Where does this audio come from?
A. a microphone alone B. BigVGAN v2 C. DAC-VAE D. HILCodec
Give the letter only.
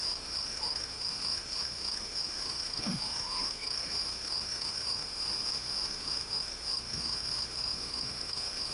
C